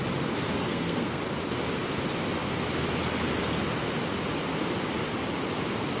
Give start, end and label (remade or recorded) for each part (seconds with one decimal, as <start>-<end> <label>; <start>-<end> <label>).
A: 0.0-0.6 recorded; 0.6-1.2 remade; 1.2-6.0 recorded